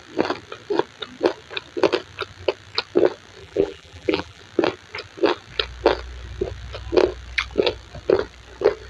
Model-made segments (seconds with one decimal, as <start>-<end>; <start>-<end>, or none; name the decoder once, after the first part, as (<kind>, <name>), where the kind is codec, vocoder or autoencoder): 3.4-4.4 (vocoder, BigVGAN v2)